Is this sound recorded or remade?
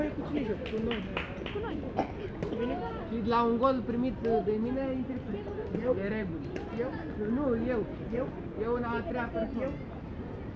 recorded